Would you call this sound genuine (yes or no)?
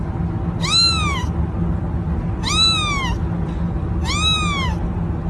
yes